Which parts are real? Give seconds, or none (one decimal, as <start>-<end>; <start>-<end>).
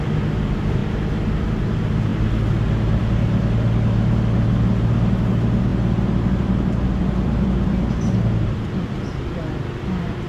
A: 0.0-5.7